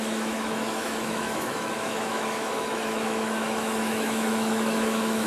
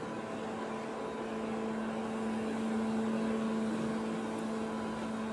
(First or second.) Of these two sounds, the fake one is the first